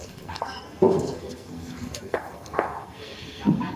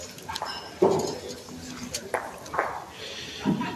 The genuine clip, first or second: second